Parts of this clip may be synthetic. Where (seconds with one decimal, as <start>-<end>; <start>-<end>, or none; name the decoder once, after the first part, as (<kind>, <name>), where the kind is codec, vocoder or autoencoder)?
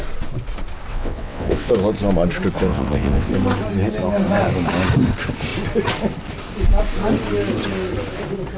0.9-1.7 (vocoder, WaveNeXt); 2.7-3.3